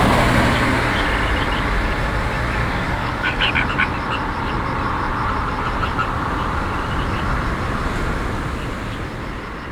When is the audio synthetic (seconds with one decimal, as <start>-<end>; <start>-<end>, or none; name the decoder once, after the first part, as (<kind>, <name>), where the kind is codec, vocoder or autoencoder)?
2.6-3.5 (codec, DAC)